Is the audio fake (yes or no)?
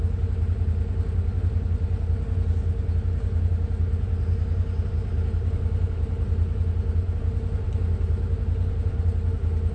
no